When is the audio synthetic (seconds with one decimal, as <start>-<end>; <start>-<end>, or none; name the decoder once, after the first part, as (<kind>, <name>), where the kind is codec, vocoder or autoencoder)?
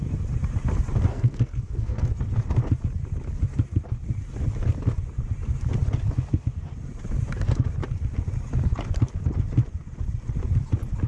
1.1-2.1 (codec, SNAC)